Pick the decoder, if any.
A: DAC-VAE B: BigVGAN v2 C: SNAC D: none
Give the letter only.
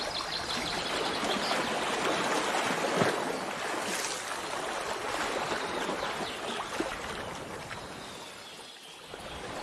D